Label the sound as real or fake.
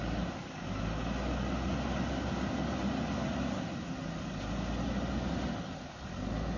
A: real